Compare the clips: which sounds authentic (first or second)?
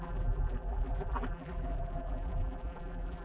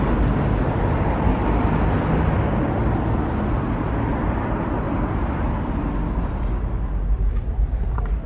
second